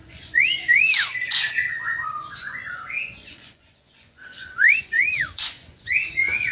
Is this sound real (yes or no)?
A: no